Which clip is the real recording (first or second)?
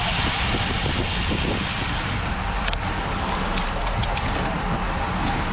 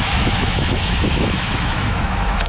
first